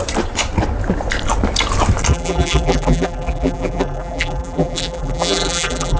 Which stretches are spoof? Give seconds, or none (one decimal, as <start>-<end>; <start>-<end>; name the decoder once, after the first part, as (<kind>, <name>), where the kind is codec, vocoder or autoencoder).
2.1-6.0 (vocoder, BigVGAN v2)